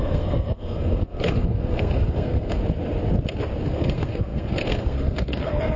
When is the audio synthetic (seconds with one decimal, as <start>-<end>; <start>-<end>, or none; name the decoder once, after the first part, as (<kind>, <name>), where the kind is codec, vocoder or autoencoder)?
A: 0.0-2.6 (codec, SNAC); 3.6-5.8